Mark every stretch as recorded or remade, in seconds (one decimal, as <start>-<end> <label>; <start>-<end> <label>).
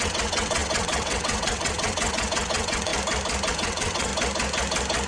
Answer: 0.0-2.9 remade; 2.9-3.5 recorded; 3.5-4.1 remade; 4.1-5.1 recorded